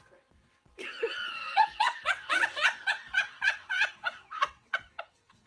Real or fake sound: fake